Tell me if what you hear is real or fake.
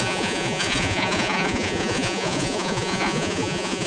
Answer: fake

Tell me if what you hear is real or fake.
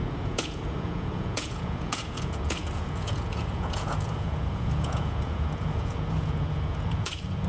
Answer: fake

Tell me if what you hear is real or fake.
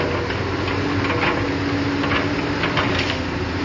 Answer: real